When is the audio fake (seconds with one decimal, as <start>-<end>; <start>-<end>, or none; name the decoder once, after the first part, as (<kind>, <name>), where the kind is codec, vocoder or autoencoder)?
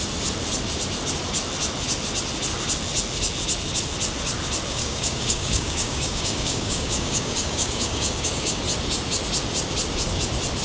4.7-8.6 (codec, DAC)